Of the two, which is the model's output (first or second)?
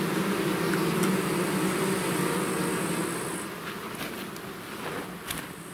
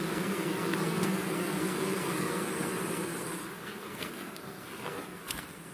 second